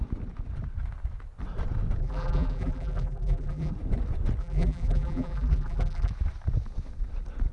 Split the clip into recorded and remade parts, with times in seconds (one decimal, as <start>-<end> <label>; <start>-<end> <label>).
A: 0.0-2.0 recorded; 2.0-3.7 remade; 3.7-4.4 recorded; 4.4-6.1 remade; 6.1-7.5 recorded